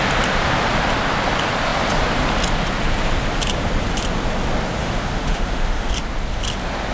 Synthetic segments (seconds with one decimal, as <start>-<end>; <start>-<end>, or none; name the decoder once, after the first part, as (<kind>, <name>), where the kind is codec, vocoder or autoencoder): 4.8-5.9 (autoencoder, DAC-VAE)